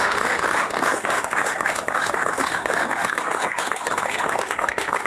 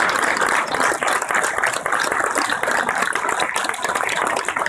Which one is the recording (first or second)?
second